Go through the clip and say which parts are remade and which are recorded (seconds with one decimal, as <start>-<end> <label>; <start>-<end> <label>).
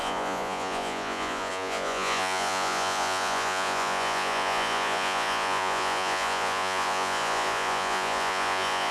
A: 0.0-8.9 remade